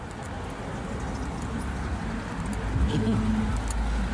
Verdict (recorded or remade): recorded